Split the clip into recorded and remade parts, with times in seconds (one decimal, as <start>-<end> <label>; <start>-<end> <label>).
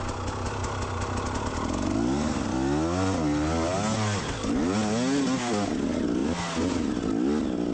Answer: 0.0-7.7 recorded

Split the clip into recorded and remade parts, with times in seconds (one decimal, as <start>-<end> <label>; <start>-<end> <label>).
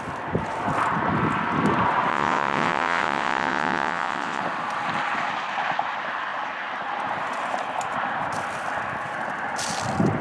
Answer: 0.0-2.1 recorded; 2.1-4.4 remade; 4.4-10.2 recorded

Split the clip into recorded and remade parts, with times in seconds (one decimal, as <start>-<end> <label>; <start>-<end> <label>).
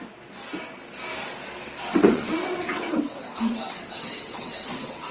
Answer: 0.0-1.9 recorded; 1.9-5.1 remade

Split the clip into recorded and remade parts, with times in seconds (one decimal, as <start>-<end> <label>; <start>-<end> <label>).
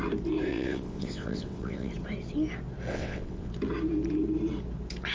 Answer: 0.0-0.5 recorded; 0.5-1.9 remade; 1.9-2.9 recorded; 2.9-3.5 remade; 3.5-5.1 recorded